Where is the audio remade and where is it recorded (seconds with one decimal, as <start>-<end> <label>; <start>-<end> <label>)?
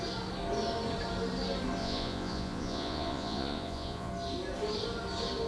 0.0-1.8 recorded; 1.8-4.1 remade; 4.1-5.5 recorded